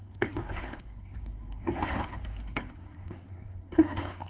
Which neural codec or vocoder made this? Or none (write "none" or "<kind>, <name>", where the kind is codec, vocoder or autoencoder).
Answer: codec, SNAC